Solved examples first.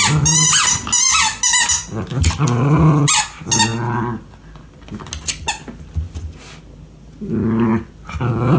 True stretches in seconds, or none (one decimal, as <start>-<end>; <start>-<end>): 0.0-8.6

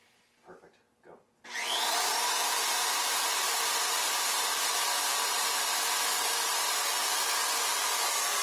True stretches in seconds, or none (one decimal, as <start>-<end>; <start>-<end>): 0.0-8.4

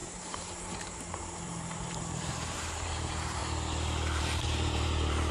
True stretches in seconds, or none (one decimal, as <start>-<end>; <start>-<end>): 3.4-4.2

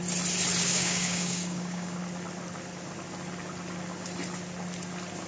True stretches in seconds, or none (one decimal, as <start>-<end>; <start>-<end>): 0.0-0.6; 2.0-5.3